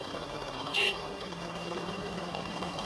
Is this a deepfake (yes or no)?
yes